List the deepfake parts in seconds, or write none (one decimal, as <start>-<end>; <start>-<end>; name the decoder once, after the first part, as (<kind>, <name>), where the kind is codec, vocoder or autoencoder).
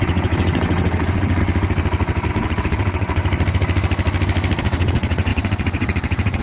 0.0-1.4 (vocoder, WaveNeXt); 2.3-3.2; 4.6-6.4